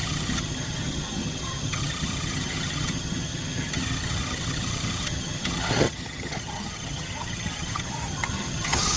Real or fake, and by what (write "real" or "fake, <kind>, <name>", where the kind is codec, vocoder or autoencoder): fake, vocoder, HiFi-GAN